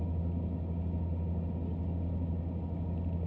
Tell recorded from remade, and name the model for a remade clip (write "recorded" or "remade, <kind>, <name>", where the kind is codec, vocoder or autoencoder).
recorded